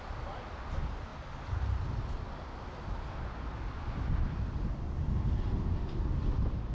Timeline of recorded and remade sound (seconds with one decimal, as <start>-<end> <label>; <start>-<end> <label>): 0.0-6.7 recorded